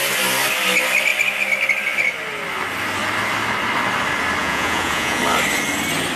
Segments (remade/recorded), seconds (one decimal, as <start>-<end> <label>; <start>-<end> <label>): 0.0-4.4 recorded; 4.4-5.2 remade; 5.2-6.2 recorded

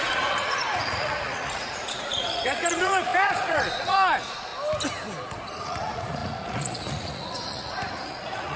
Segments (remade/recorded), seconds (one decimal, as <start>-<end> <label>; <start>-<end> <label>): 0.0-4.5 remade; 4.5-5.6 recorded; 5.6-8.6 remade

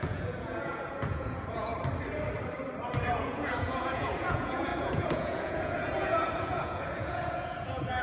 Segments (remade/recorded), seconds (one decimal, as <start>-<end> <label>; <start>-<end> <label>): 0.0-1.7 remade; 1.7-3.1 recorded; 3.1-8.0 remade

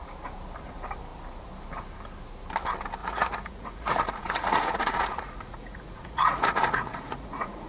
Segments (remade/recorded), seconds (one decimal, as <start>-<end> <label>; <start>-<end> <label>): 0.0-3.0 recorded; 3.0-7.7 remade

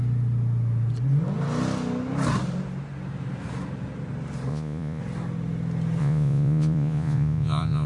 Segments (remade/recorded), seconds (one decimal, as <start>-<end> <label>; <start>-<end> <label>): 0.0-4.5 recorded; 4.5-5.0 remade; 5.0-6.0 recorded; 6.0-7.9 remade

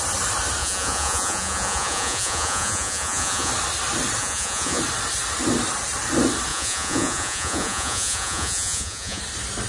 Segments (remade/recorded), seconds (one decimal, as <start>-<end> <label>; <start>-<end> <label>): 0.0-0.6 recorded; 0.6-3.5 remade; 3.5-4.2 recorded; 4.2-4.8 remade; 4.8-6.5 recorded; 6.5-9.2 remade; 9.2-9.7 recorded

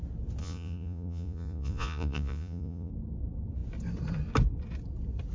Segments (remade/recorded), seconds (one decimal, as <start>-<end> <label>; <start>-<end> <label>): 0.0-0.4 recorded; 0.4-2.9 remade; 2.9-5.3 recorded